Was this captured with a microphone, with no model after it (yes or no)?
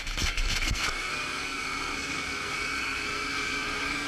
no